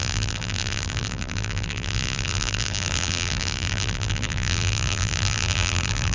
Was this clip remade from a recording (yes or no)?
yes